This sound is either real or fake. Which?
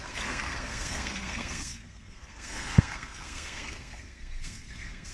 fake